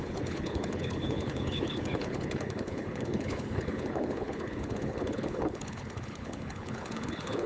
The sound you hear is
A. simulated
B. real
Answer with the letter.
A